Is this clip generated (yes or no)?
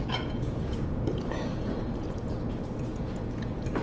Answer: yes